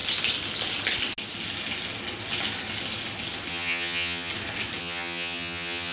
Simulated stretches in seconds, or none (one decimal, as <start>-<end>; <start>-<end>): 3.5-4.3; 4.8-5.9

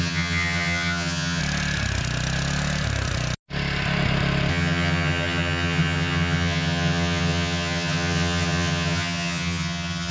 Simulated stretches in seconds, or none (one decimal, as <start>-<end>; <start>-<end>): 0.0-1.4; 4.5-10.1

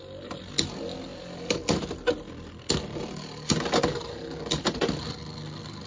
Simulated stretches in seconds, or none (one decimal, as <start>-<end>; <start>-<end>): none

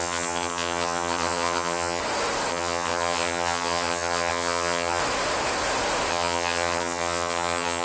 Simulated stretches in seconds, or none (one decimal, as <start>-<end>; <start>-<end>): 0.0-2.0; 2.5-5.0; 6.1-7.8

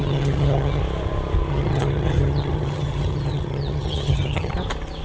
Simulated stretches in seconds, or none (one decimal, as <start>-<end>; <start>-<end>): 0.0-0.8; 1.5-4.5

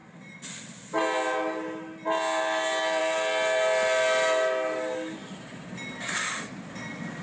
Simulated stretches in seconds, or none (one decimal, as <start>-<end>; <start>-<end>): none

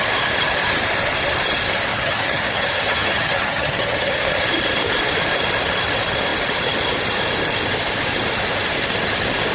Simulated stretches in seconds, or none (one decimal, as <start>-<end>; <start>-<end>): 1.9-4.1